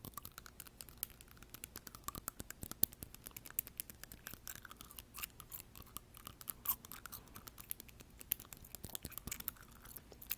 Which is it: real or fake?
real